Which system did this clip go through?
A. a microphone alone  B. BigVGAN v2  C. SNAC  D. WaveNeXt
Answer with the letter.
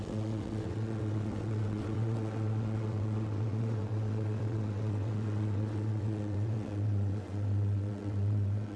D